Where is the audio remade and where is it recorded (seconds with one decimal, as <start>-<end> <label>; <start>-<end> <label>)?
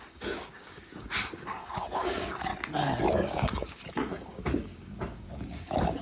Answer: 0.0-2.5 remade; 2.5-3.1 recorded; 3.1-6.0 remade